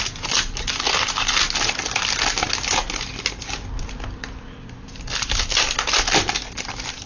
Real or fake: real